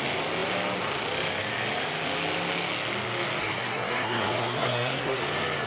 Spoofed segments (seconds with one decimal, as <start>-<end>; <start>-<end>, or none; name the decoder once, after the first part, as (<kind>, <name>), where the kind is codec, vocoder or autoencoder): 3.4-5.2 (codec, SNAC)